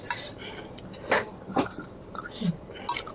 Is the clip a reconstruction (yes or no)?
no